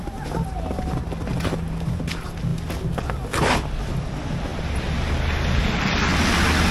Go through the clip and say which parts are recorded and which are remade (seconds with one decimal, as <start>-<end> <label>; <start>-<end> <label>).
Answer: 0.0-6.7 recorded